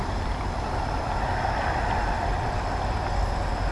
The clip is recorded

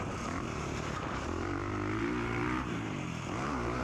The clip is remade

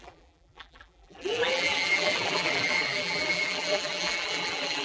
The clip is remade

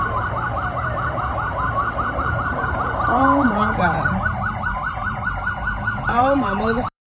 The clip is remade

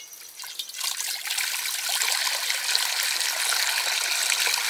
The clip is recorded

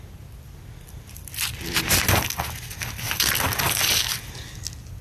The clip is recorded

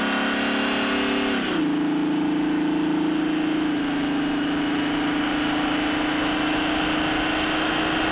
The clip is recorded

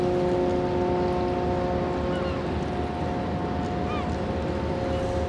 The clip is recorded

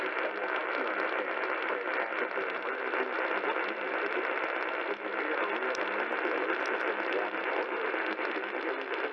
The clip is recorded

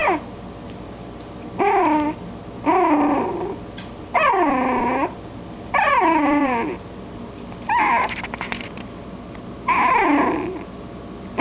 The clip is remade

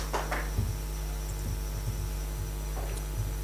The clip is recorded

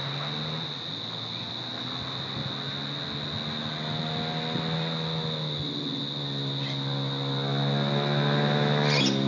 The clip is recorded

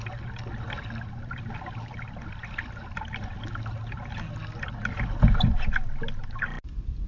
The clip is recorded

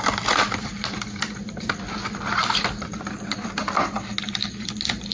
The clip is remade